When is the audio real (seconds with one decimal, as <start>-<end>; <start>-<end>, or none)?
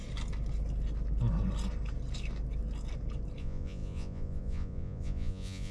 0.0-3.4